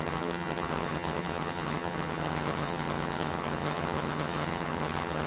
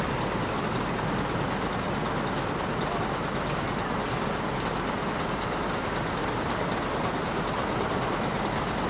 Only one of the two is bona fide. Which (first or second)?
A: second